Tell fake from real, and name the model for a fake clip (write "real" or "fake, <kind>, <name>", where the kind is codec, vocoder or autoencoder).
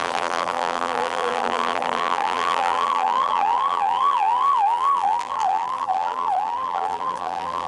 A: fake, vocoder, BigVGAN v2